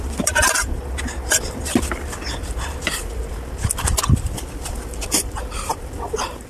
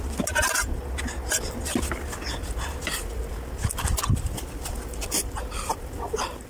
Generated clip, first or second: first